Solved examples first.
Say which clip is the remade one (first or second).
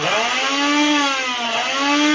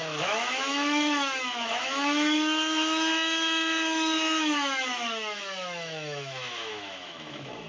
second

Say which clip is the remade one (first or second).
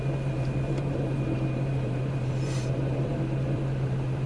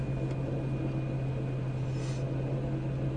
first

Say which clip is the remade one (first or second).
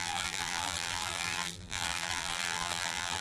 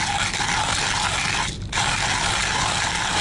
first